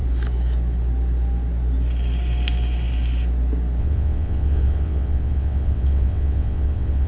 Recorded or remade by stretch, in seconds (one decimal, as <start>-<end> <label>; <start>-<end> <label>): 0.0-3.8 recorded; 3.8-7.1 remade

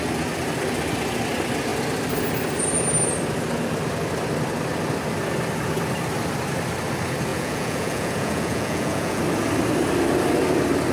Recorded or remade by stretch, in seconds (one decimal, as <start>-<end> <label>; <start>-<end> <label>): 0.0-7.3 recorded; 7.3-9.2 remade; 9.2-10.9 recorded